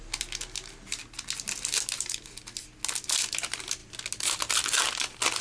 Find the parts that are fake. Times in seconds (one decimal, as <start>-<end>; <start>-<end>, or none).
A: none